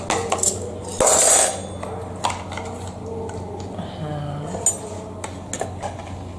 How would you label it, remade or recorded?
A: recorded